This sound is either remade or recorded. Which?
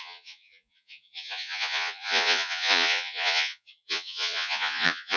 remade